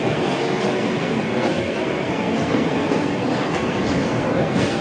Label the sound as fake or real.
fake